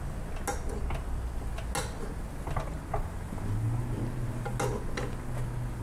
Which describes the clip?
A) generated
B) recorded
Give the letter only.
B